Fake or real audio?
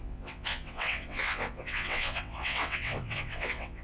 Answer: fake